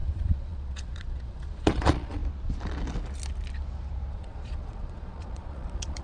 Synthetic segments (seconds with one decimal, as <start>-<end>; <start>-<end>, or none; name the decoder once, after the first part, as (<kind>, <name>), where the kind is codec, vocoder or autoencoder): 0.0-2.2 (vocoder, Vocos); 4.1-6.0